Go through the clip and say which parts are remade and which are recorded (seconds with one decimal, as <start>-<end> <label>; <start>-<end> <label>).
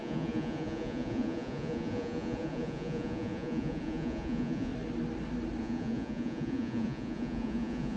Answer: 0.0-4.7 remade; 4.7-5.6 recorded; 5.6-8.0 remade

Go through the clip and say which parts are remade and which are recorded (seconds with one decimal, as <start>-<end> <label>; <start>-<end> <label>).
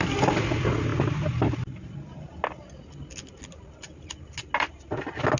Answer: 0.0-5.4 recorded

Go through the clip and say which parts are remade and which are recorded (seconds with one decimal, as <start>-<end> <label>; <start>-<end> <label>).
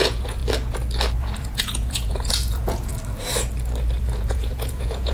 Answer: 0.0-0.4 remade; 0.4-1.2 recorded; 1.2-2.9 remade; 2.9-4.0 recorded; 4.0-5.1 remade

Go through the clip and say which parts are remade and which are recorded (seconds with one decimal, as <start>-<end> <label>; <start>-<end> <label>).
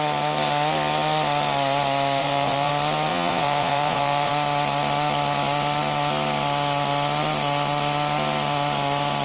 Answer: 0.0-2.2 recorded; 2.2-2.7 remade; 2.7-3.1 recorded; 3.1-4.3 remade; 4.3-9.2 recorded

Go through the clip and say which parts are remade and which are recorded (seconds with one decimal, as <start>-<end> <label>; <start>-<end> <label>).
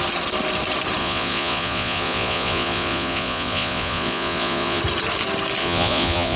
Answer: 0.0-1.0 recorded; 1.0-4.8 remade; 4.8-5.6 recorded; 5.6-6.4 remade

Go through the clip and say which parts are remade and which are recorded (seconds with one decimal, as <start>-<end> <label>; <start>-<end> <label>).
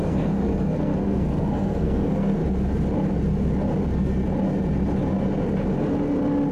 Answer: 0.0-2.4 remade; 2.4-6.5 recorded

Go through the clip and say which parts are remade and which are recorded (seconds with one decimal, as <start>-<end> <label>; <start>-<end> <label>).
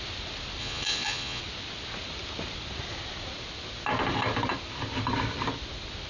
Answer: 0.0-0.6 recorded; 0.6-1.4 remade; 1.4-6.1 recorded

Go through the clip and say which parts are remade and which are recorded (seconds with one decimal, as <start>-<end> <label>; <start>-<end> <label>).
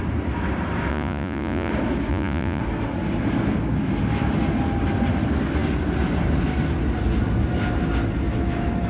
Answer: 0.0-0.9 recorded; 0.9-1.7 remade; 1.7-2.1 recorded; 2.1-2.6 remade; 2.6-8.9 recorded